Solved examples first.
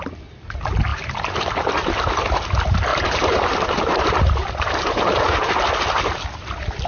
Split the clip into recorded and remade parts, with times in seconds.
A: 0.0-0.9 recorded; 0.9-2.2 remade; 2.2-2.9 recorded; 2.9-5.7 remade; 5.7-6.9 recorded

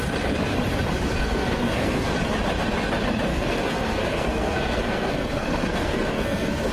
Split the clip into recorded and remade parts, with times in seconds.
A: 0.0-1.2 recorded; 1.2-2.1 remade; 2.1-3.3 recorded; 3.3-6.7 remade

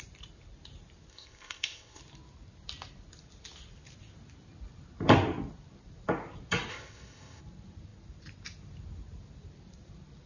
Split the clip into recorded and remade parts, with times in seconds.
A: 0.0-1.1 recorded; 1.1-2.0 remade; 2.0-6.7 recorded; 6.7-7.4 remade; 7.4-10.3 recorded

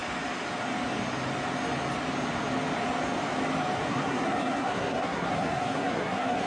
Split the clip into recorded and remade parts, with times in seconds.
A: 0.0-3.9 recorded; 3.9-6.5 remade

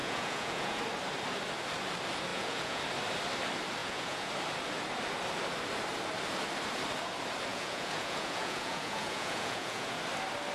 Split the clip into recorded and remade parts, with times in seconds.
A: 0.0-0.8 remade; 0.8-2.3 recorded; 2.3-2.8 remade; 2.8-3.8 recorded; 3.8-4.3 remade; 4.3-7.5 recorded; 7.5-10.0 remade; 10.0-10.5 recorded

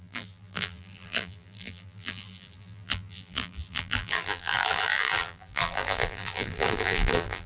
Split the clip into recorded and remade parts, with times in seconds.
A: 0.0-7.5 remade

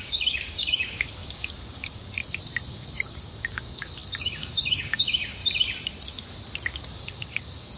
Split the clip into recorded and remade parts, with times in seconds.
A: 0.0-2.2 remade; 2.2-2.7 recorded; 2.7-5.4 remade; 5.4-6.8 recorded; 6.8-7.8 remade

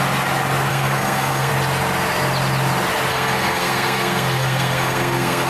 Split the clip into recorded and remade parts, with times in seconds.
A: 0.0-0.7 recorded; 0.7-1.5 remade; 1.5-3.1 recorded; 3.1-5.5 remade